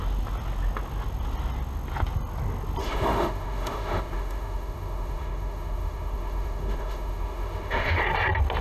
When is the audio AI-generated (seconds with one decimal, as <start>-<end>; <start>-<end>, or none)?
2.8-8.0